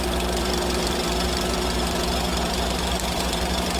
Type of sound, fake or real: fake